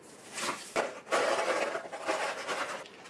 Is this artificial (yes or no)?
no